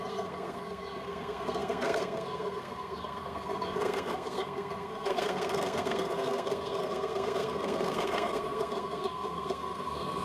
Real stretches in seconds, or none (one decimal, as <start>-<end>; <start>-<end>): none